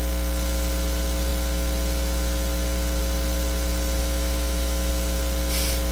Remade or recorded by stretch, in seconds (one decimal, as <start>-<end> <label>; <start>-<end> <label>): 0.0-4.0 recorded; 4.0-4.9 remade; 4.9-5.9 recorded